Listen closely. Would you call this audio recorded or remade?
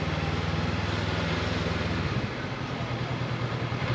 recorded